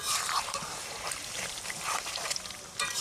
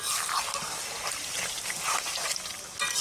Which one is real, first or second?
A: second